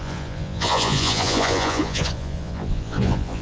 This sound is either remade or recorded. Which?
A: remade